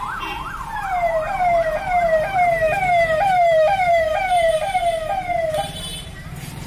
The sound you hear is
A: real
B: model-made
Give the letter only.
B